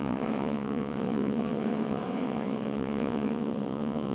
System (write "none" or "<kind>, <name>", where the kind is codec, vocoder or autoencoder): vocoder, WaveNeXt